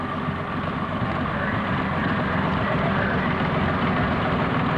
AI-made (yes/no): no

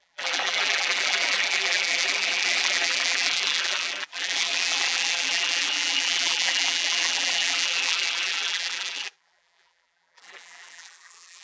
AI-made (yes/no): yes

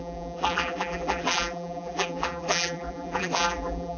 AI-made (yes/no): yes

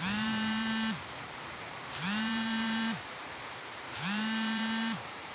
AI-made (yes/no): yes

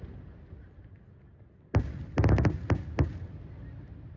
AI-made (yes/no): no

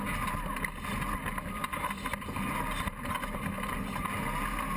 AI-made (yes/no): no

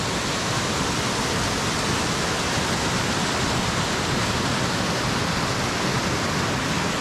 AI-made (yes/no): no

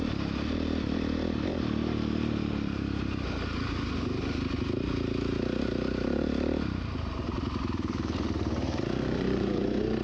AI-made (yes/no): yes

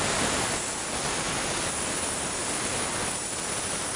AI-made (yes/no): no